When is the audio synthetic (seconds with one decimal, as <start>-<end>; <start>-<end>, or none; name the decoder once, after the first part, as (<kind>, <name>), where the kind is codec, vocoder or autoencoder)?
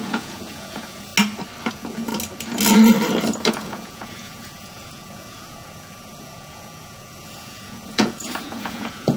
0.0-1.1 (vocoder, Vocos); 1.7-2.1; 3.5-9.2